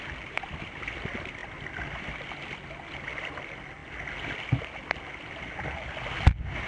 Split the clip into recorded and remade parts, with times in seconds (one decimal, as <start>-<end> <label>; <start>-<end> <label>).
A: 0.0-6.7 recorded